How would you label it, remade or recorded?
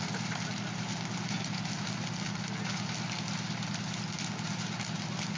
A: recorded